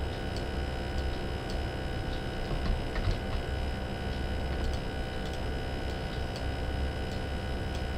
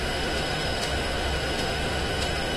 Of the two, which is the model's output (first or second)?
second